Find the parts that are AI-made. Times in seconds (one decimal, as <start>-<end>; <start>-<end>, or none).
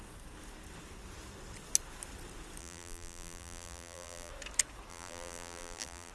2.6-4.3; 4.9-6.1